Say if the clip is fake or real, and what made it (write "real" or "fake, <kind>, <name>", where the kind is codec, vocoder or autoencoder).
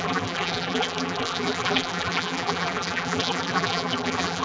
fake, vocoder, BigVGAN v2